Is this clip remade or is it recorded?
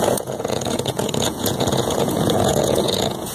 remade